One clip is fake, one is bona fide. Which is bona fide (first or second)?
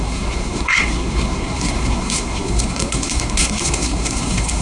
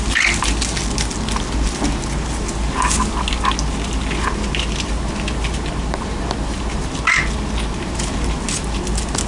second